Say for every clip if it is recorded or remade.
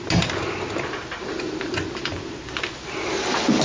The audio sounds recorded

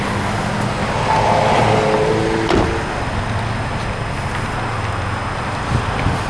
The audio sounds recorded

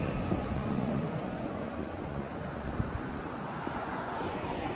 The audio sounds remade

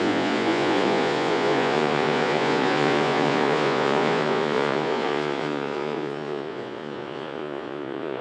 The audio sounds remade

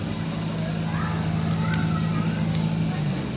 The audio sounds recorded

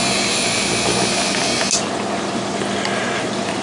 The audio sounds recorded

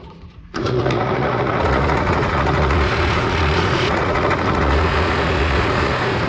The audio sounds remade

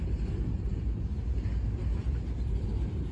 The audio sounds recorded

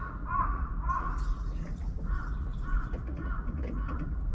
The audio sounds remade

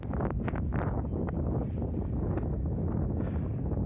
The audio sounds recorded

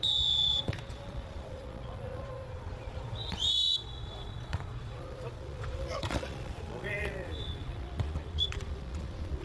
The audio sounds remade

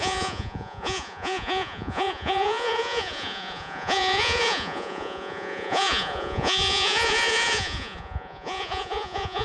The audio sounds remade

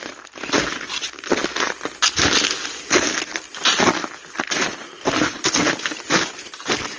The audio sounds recorded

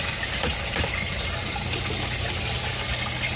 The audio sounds recorded